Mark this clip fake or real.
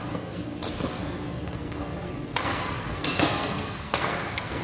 fake